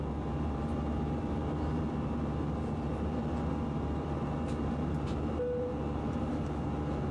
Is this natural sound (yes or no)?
no